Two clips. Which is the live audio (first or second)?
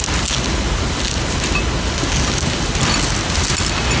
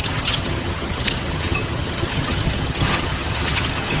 first